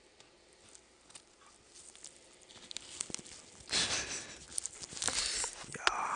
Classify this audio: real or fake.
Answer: real